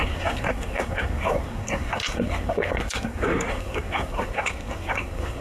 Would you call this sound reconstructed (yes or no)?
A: yes